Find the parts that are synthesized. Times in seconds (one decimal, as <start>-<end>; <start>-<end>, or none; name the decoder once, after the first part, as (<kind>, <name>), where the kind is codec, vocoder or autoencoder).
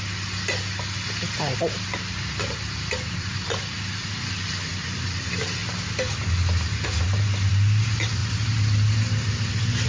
none